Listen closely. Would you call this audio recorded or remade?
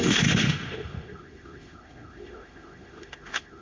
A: remade